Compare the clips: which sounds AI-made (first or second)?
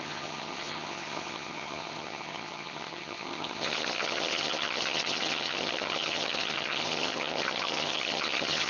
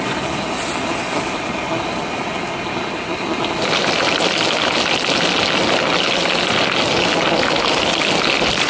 first